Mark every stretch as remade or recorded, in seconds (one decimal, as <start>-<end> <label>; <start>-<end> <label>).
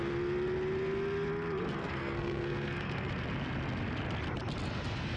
0.0-1.8 recorded; 1.8-3.1 remade; 3.1-5.2 recorded